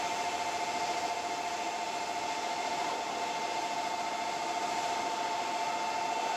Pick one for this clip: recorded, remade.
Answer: recorded